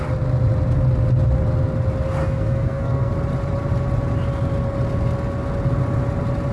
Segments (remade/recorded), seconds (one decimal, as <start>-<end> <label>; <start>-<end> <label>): 0.0-2.2 recorded; 2.2-3.1 remade; 3.1-6.5 recorded